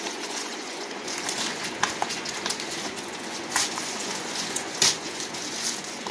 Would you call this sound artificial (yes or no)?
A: yes